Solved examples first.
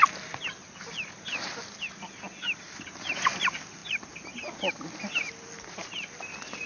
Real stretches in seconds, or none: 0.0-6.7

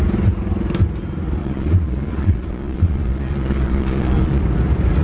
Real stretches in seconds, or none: 0.0-1.4; 4.4-5.0

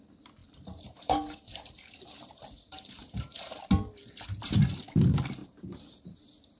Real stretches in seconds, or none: 0.0-0.4; 3.6-5.4; 6.0-6.6

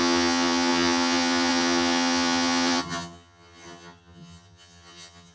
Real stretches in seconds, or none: none